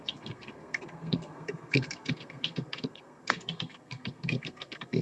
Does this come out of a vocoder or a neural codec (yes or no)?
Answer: yes